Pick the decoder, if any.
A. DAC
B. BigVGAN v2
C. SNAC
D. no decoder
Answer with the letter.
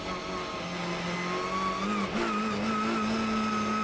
D